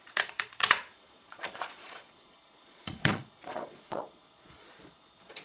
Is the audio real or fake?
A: fake